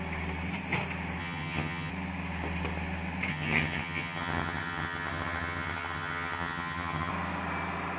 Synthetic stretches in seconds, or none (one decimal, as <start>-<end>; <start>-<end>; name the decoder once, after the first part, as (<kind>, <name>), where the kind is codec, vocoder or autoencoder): 1.2-1.9 (vocoder, HiFi-GAN); 3.3-7.1